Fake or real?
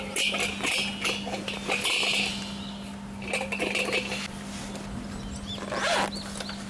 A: real